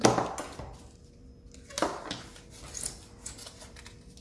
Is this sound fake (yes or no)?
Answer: no